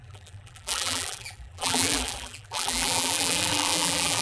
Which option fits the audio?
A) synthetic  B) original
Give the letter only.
A